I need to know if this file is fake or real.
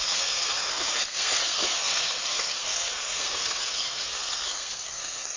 fake